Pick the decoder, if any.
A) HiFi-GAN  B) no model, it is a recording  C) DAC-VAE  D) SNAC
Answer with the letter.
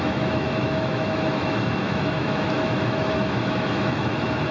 C